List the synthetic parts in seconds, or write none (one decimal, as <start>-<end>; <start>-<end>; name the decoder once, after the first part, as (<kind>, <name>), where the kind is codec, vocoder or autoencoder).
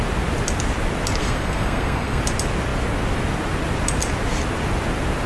1.2-2.2 (codec, SNAC)